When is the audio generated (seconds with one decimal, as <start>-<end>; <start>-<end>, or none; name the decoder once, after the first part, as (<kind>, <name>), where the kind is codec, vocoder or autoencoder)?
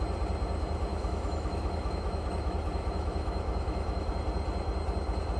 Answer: 0.9-4.1 (autoencoder, DAC-VAE)